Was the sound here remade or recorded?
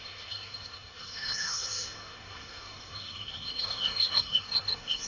remade